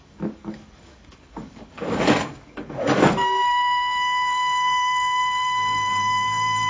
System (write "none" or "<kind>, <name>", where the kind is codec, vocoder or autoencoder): codec, DAC